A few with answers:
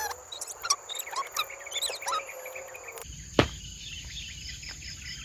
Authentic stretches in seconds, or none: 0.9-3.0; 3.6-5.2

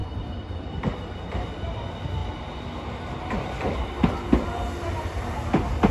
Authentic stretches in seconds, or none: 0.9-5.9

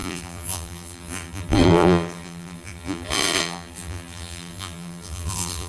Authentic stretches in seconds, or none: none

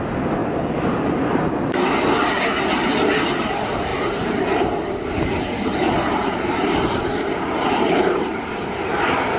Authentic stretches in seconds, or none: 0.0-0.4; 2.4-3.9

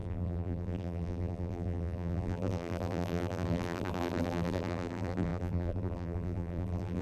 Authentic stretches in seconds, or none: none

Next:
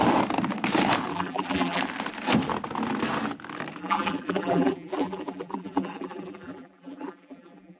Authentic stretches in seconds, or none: 0.0-1.1; 1.8-3.8

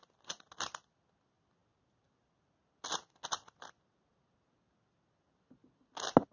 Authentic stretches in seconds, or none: 0.0-6.3

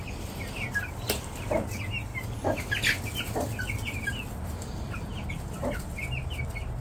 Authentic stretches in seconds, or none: 0.0-6.8